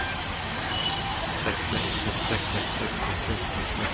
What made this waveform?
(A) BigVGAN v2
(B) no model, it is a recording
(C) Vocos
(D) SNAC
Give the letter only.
B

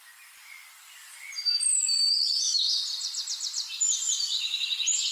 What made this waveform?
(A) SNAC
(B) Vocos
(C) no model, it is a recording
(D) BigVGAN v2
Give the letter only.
D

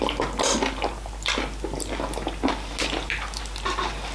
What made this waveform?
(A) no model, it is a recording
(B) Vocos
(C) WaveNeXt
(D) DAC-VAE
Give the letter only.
A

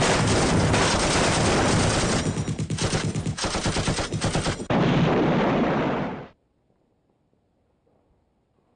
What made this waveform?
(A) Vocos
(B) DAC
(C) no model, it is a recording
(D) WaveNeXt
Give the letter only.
C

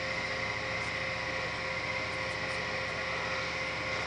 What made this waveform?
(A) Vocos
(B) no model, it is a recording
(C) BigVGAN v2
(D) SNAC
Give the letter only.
B